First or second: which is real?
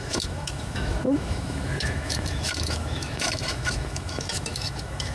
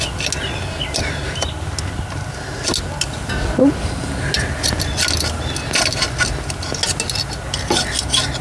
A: second